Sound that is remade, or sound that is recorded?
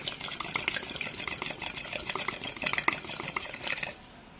recorded